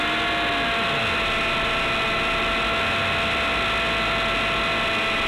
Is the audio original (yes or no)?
yes